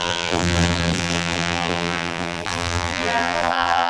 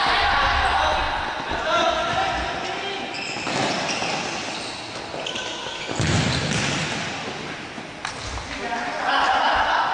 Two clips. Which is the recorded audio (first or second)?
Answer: second